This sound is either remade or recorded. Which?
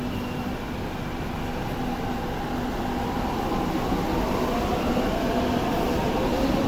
recorded